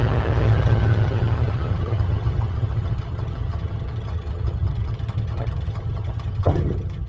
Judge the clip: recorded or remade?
remade